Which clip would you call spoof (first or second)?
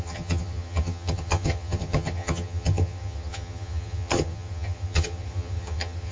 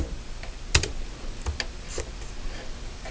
first